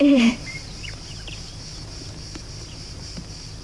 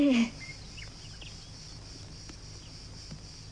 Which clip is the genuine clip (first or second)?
second